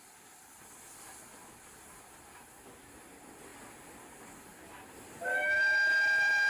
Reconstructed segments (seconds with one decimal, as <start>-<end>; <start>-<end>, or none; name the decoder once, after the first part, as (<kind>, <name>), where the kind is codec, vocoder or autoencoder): 5.3-5.9 (autoencoder, DAC-VAE)